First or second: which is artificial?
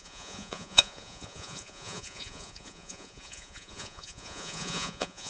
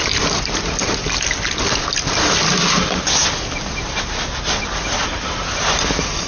first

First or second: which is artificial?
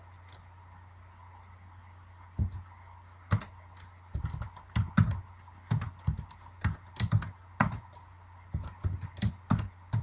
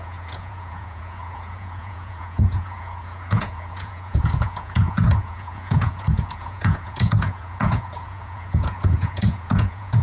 second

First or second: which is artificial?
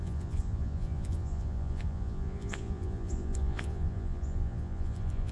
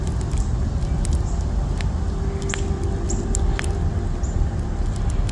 first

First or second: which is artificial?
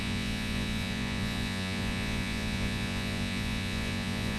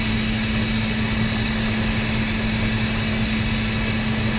first